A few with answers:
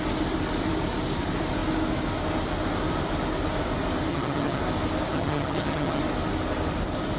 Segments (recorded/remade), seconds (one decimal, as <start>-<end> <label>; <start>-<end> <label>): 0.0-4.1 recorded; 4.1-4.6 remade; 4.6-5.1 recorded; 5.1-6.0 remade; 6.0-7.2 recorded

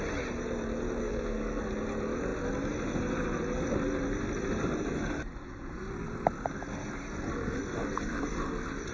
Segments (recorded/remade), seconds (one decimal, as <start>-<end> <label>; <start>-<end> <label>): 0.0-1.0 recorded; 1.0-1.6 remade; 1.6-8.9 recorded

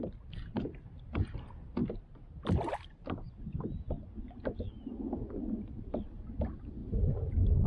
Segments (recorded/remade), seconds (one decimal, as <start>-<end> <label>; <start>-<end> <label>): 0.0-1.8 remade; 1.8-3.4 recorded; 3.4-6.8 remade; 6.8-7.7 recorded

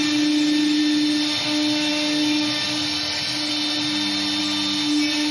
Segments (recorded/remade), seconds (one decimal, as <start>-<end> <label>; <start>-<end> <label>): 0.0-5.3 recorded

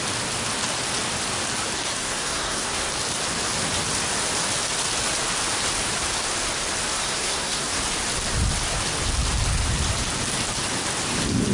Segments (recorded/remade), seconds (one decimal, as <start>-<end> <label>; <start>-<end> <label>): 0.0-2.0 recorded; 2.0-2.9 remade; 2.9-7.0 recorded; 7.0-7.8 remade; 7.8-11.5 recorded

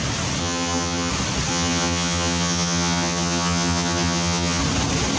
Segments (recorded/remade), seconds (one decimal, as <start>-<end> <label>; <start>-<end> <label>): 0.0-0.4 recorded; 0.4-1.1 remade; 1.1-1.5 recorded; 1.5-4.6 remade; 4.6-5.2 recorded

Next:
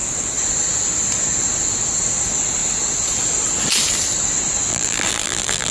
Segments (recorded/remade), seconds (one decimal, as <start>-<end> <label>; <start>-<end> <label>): 0.0-4.7 recorded; 4.7-5.7 remade

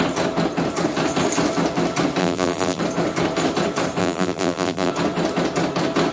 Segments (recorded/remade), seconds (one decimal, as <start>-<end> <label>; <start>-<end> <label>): 0.0-2.2 recorded; 2.2-2.8 remade; 2.8-4.0 recorded; 4.0-4.9 remade; 4.9-6.1 recorded